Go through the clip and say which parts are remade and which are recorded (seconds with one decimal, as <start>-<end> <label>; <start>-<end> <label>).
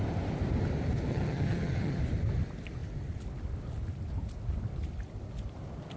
0.0-1.1 recorded; 1.1-2.0 remade; 2.0-6.0 recorded